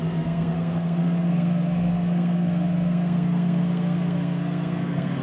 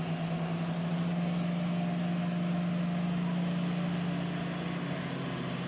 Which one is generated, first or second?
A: first